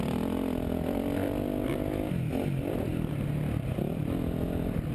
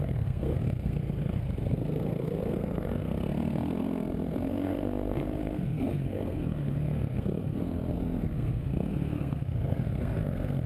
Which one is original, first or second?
first